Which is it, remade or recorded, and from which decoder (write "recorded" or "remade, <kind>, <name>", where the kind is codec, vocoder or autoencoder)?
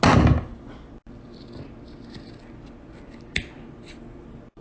recorded